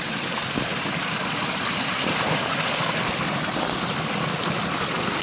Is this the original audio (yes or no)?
yes